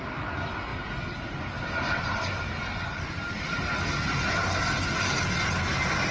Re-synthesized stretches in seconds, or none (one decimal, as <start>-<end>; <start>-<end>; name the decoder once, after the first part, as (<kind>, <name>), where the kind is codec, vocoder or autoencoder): none